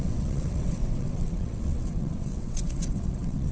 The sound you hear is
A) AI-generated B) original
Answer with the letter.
A